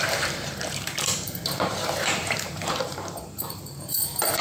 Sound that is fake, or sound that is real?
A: fake